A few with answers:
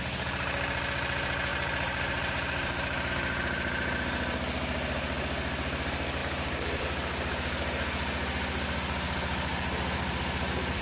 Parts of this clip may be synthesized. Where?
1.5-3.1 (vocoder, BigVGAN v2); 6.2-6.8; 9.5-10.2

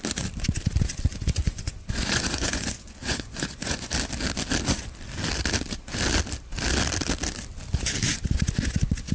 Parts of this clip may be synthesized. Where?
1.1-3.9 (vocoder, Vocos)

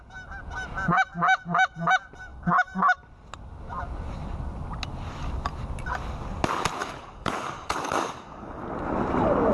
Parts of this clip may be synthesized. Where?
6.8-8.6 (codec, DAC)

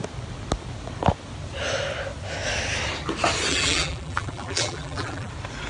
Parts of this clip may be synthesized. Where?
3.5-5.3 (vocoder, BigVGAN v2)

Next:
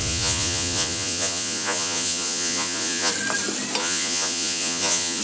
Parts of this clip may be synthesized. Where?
0.0-3.1 (vocoder, Vocos); 3.8-5.2